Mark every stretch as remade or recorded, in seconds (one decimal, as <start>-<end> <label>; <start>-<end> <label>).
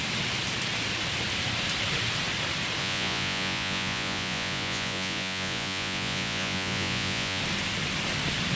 0.0-2.8 recorded; 2.8-7.4 remade; 7.4-8.6 recorded